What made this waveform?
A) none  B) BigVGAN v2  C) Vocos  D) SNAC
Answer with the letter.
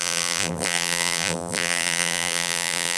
B